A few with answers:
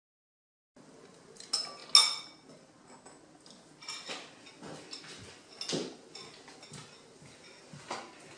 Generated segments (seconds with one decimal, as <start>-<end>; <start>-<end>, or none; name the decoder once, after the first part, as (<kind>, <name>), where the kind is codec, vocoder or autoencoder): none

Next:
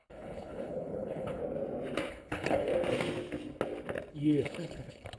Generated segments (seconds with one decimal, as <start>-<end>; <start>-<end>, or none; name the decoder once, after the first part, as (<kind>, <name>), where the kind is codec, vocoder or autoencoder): 0.0-1.4 (codec, HILCodec); 2.1-2.7; 4.1-5.2

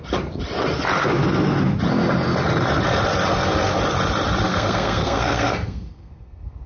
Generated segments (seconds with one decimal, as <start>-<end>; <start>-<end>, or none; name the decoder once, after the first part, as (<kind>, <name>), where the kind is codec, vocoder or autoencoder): 4.5-6.7 (codec, SNAC)

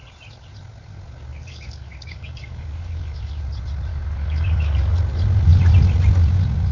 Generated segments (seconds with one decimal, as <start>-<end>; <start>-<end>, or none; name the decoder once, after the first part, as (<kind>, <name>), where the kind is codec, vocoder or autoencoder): 1.3-3.4 (codec, DAC); 3.9-5.0